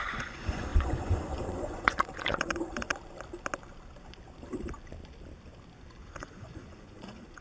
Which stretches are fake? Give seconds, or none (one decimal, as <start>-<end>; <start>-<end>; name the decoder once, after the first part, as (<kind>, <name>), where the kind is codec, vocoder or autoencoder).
0.0-2.9 (vocoder, Vocos); 6.0-7.4